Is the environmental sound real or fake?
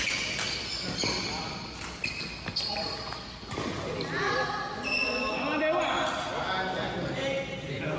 real